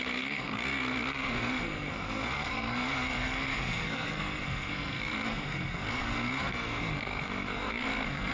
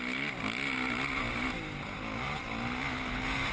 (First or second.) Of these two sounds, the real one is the second